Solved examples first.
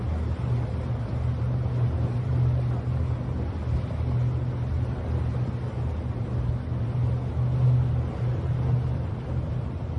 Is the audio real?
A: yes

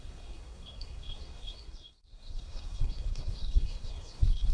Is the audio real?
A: no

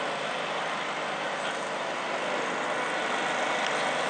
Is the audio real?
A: yes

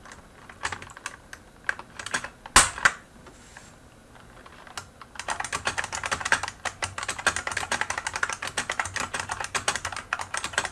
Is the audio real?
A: yes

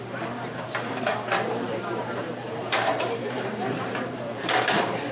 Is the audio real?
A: no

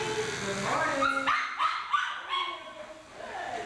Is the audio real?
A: yes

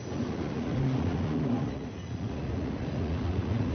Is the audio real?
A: no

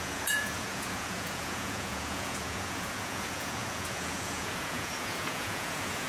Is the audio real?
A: no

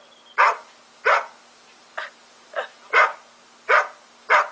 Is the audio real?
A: yes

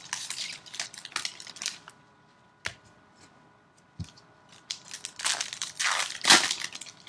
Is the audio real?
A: yes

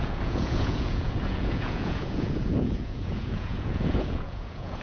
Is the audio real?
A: no